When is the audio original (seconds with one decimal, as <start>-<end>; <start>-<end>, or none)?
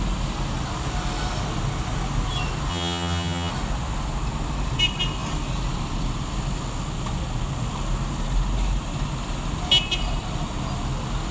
0.0-2.7; 3.5-11.3